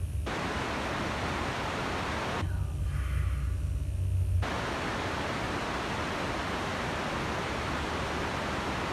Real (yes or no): yes